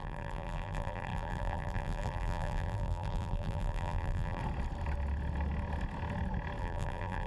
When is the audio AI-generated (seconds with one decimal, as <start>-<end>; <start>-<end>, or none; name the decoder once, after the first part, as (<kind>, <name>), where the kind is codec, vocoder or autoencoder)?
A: 0.0-4.4 (vocoder, BigVGAN v2); 6.6-7.3

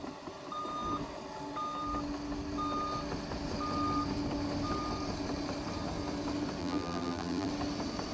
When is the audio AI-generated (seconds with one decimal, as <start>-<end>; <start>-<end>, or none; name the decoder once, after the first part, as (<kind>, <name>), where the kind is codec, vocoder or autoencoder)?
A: 6.6-7.5 (vocoder, BigVGAN v2)

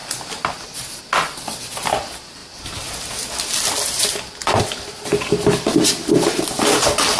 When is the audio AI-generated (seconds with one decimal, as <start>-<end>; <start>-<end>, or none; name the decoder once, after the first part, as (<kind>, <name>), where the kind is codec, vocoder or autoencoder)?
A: none